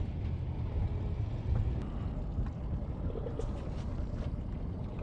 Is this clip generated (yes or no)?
no